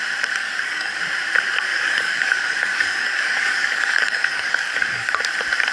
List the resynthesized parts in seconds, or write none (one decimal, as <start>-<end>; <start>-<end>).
0.4-1.0; 1.7-5.1

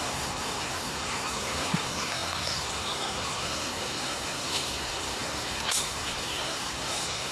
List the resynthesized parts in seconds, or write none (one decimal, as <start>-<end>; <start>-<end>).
0.0-7.3

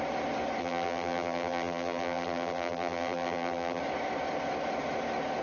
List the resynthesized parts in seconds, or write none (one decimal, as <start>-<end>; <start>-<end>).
0.6-3.8

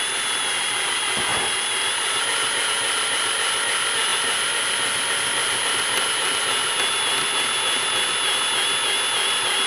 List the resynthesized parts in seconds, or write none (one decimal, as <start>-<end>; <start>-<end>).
none

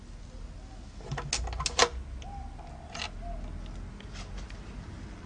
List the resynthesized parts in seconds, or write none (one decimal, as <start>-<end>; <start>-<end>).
none

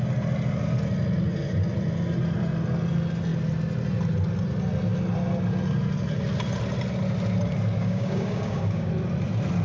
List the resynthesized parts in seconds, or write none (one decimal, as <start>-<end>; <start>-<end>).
7.8-8.9